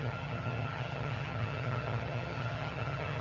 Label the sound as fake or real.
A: fake